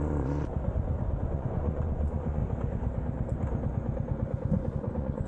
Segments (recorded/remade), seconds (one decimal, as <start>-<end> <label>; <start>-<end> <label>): 0.0-0.5 remade; 0.5-1.2 recorded; 1.2-2.4 remade; 2.4-4.7 recorded; 4.7-5.3 remade

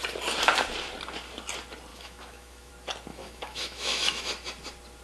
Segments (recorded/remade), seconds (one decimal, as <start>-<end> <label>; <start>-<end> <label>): 0.0-1.9 recorded; 1.9-2.7 remade; 2.7-3.1 recorded; 3.1-4.3 remade; 4.3-5.0 recorded

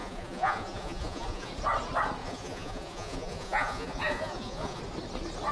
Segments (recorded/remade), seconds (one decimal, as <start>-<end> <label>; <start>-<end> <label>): 0.0-1.5 remade; 1.5-2.2 recorded; 2.2-4.8 remade; 4.8-5.5 recorded

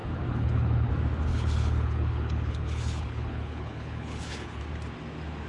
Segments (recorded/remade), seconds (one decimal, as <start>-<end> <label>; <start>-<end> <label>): 0.0-0.9 remade; 0.9-1.3 recorded; 1.3-4.6 remade; 4.6-5.5 recorded

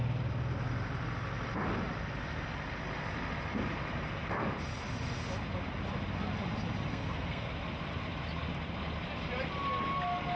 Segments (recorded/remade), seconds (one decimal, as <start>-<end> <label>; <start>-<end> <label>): 0.0-6.9 recorded; 6.9-7.5 remade; 7.5-10.4 recorded

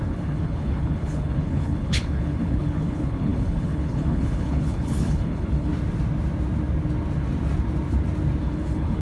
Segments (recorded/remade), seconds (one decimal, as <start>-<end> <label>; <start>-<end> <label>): 0.0-5.7 remade; 5.7-8.4 recorded; 8.4-9.0 remade

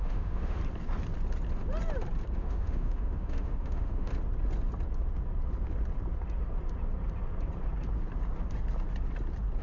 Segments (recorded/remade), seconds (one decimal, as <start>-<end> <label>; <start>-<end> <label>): 0.0-0.6 remade; 0.6-2.4 recorded; 2.4-4.1 remade; 4.1-9.6 recorded